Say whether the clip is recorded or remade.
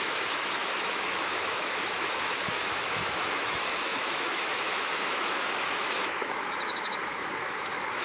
remade